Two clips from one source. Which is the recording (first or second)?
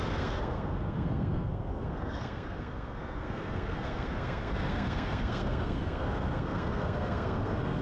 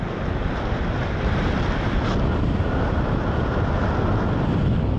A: second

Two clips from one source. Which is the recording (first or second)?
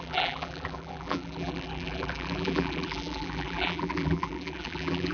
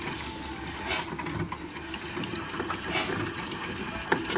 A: second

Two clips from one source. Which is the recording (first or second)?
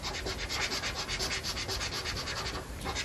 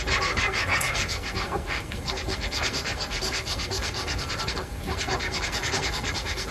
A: first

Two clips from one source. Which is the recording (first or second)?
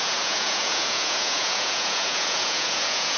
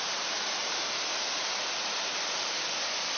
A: second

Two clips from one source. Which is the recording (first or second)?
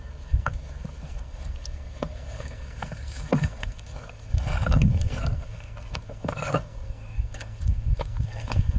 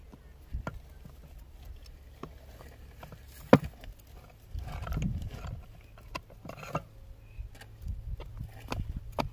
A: second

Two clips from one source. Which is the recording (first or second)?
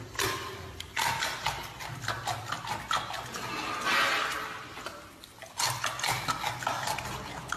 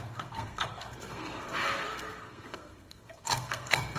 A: first